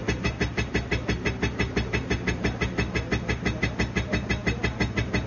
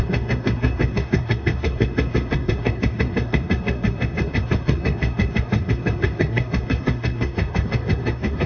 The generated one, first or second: second